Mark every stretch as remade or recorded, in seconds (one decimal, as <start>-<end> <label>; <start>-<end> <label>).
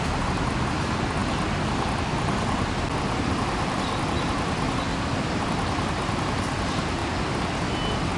0.0-8.2 recorded